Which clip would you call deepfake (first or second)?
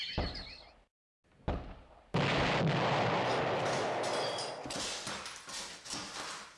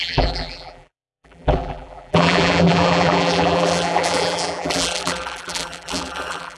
second